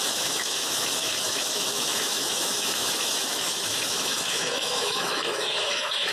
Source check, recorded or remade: remade